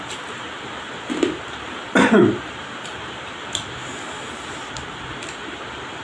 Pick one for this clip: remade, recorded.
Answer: recorded